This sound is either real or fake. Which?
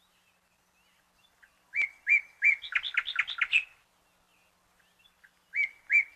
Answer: real